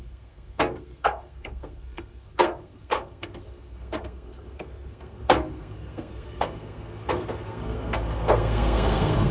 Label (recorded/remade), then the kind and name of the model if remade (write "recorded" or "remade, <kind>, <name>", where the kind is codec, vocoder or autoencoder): remade, codec, SNAC